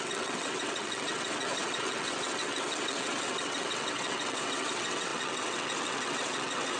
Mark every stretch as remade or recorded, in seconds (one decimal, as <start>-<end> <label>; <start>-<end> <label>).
0.0-6.8 remade